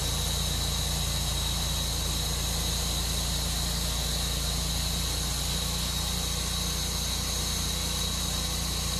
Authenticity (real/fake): real